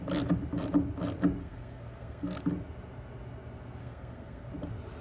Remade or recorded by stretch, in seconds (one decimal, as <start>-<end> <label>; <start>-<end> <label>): 0.0-1.4 recorded; 1.4-2.4 remade; 2.4-3.8 recorded; 3.8-4.5 remade; 4.5-5.0 recorded

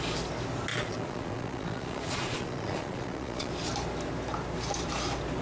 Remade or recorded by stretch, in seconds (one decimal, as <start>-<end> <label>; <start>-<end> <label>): 0.0-0.7 recorded; 0.7-3.5 remade; 3.5-5.4 recorded

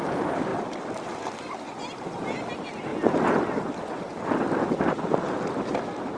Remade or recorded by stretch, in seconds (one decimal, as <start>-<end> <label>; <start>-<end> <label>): 0.0-6.2 recorded

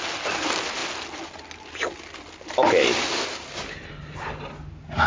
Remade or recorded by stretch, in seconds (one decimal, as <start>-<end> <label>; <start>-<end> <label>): 0.0-5.1 recorded

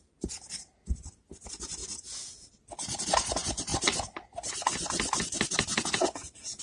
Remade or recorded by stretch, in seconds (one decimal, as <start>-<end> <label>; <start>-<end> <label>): 0.0-1.8 recorded; 1.8-2.5 remade; 2.5-5.7 recorded; 5.7-6.6 remade

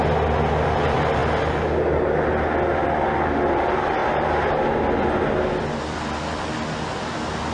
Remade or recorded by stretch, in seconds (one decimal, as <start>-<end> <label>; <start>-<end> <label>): 0.0-7.5 recorded

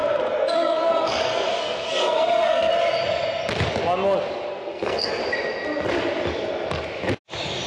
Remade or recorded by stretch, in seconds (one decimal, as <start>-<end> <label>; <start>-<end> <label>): 0.0-2.7 remade; 2.7-4.5 recorded; 4.5-5.2 remade; 5.2-7.7 recorded